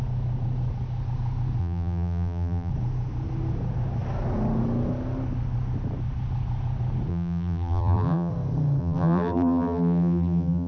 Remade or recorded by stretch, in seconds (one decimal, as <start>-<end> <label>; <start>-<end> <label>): 0.0-1.6 recorded; 1.6-2.7 remade; 2.7-7.1 recorded; 7.1-8.3 remade; 8.3-8.8 recorded; 8.8-10.7 remade